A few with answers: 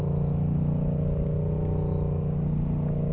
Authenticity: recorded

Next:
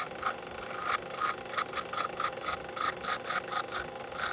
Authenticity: recorded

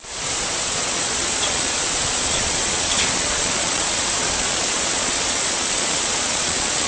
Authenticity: remade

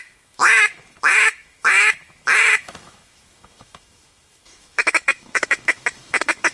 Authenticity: remade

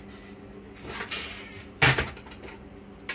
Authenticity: recorded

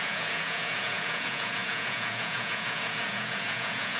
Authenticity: remade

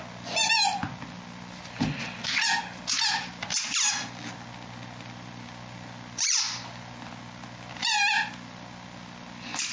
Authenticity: recorded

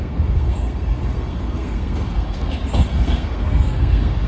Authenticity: remade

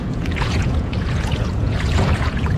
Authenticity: remade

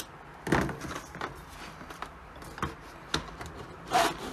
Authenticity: recorded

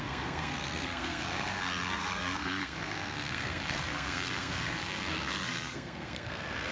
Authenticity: remade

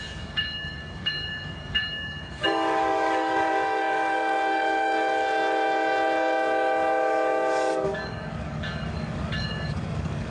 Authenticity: remade